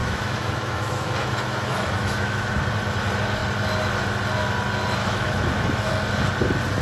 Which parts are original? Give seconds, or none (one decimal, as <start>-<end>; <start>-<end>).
2.5-5.0; 5.9-6.8